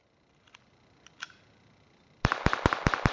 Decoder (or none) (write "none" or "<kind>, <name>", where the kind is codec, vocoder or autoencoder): none